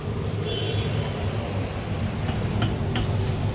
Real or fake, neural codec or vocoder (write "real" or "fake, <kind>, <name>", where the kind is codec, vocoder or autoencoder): fake, vocoder, BigVGAN v2